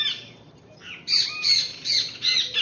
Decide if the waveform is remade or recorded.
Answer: remade